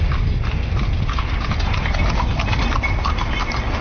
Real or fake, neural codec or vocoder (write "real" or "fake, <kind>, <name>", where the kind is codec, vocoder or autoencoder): real